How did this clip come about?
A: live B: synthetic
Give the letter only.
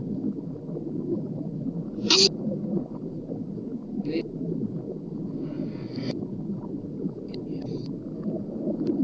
A